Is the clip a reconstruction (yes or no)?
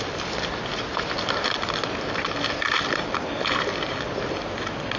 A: no